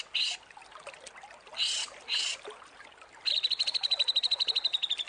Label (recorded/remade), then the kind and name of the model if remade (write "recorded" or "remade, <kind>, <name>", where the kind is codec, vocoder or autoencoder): recorded